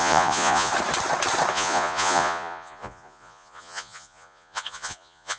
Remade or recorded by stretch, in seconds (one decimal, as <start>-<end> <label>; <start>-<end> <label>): 0.0-0.7 remade; 0.7-1.5 recorded; 1.5-5.4 remade